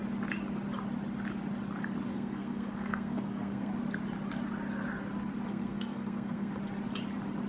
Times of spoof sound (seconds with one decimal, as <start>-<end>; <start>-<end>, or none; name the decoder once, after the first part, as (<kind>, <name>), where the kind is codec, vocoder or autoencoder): 2.1-3.7 (codec, SNAC); 5.5-6.5